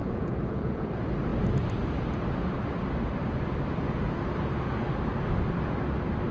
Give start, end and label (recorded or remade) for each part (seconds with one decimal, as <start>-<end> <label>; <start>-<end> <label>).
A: 0.0-0.9 remade; 0.9-6.3 recorded